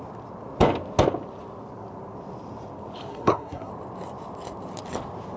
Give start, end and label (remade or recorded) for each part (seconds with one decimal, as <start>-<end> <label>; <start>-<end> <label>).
0.0-3.1 recorded; 3.1-3.7 remade; 3.7-5.4 recorded